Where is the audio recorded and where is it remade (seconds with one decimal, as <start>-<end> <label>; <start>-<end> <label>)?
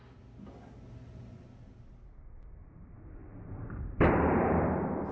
0.0-2.6 recorded; 2.6-4.6 remade; 4.6-5.1 recorded